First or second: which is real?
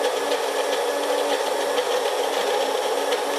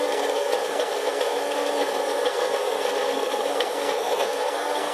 first